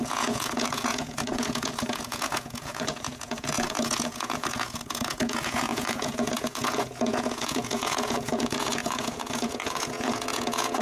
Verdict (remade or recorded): remade